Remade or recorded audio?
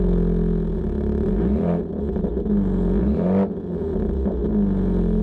recorded